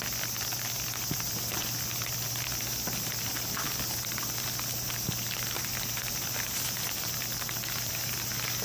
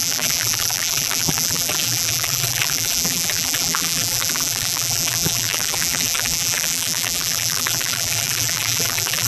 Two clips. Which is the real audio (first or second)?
first